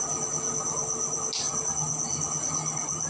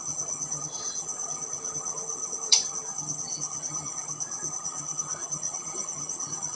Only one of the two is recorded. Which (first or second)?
first